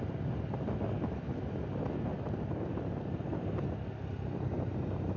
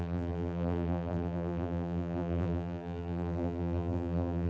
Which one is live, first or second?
first